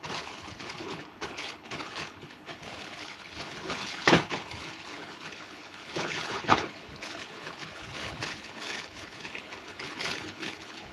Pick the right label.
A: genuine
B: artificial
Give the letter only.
B